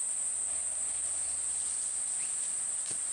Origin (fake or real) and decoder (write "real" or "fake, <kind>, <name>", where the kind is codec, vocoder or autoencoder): real